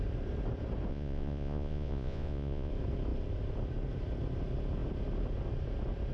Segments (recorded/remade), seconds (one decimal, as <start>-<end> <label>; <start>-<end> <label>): 0.0-0.9 recorded; 0.9-2.7 remade; 2.7-6.1 recorded